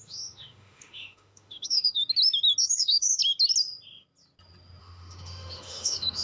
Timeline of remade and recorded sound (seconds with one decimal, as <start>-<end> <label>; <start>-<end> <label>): 0.0-2.0 remade; 2.0-2.6 recorded; 2.6-3.2 remade; 3.2-4.8 recorded; 4.8-6.2 remade